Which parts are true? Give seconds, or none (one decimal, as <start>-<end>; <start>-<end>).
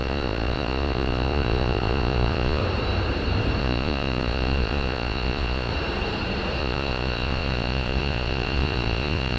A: 2.6-3.6; 5.7-6.6